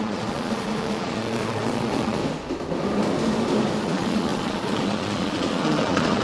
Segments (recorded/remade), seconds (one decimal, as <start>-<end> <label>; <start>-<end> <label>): 0.0-2.2 remade; 2.2-3.8 recorded; 3.8-6.2 remade